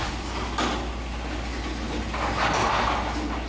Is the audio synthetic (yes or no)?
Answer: no